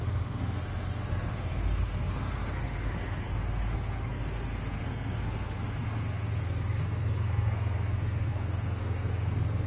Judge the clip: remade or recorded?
remade